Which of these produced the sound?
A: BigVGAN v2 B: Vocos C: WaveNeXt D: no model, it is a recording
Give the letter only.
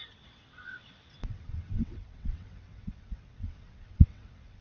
C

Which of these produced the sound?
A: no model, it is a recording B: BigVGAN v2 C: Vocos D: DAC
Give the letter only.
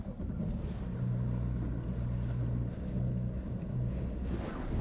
A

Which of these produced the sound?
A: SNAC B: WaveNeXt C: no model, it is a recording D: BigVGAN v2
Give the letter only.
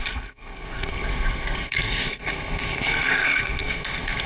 A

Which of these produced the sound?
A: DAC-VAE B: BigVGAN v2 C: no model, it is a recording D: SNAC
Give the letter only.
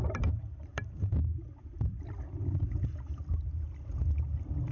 C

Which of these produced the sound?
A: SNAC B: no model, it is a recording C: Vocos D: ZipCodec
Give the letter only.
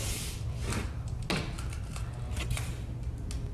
B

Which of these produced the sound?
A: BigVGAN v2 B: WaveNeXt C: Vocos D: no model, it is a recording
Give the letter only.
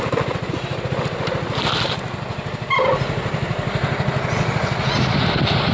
D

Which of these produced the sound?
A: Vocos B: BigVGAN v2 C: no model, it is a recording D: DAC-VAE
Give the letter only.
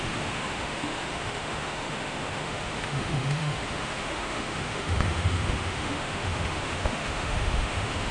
D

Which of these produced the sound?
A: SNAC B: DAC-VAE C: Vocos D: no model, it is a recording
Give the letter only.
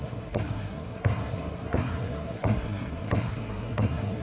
A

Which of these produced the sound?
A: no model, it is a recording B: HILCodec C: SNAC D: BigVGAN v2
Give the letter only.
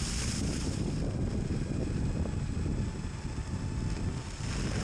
D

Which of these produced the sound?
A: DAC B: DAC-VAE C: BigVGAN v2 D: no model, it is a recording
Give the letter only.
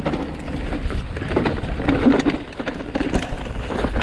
D